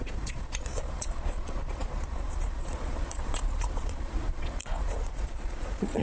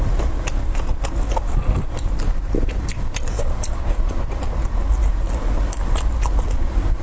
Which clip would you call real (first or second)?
second